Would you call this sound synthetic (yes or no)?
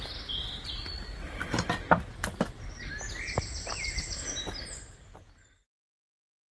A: no